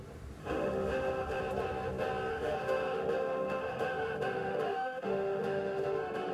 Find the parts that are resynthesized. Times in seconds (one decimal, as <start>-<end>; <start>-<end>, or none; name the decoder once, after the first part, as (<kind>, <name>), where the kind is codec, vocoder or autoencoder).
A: 0.4-1.4 (autoencoder, DAC-VAE); 2.3-6.3